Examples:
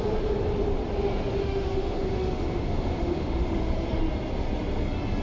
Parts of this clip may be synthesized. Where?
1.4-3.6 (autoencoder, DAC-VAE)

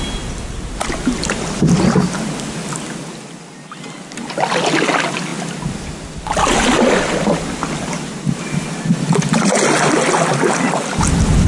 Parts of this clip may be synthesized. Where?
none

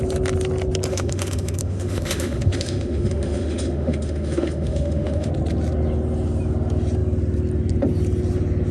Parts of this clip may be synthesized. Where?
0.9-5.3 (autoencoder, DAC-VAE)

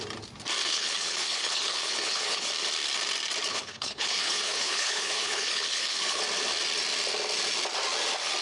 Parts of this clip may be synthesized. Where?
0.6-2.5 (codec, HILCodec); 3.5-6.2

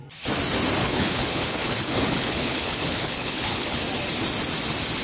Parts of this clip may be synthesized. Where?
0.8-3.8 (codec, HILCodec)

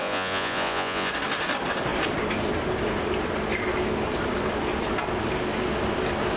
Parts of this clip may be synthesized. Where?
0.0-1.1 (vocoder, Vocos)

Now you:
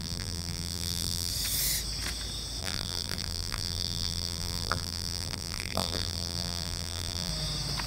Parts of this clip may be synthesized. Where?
0.0-1.3 (vocoder, BigVGAN v2); 2.6-7.3

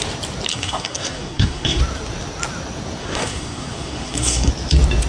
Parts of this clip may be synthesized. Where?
0.5-1.8 (codec, SNAC); 3.0-4.5